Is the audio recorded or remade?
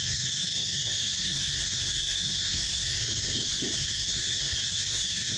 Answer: remade